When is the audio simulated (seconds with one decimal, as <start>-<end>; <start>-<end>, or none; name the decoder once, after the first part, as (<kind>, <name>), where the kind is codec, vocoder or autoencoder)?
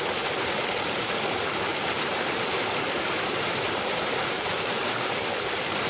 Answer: 1.7-5.2 (vocoder, BigVGAN v2)